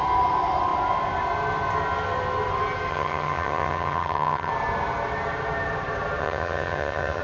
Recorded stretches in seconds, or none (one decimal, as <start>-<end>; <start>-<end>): 0.0-2.9; 4.5-6.2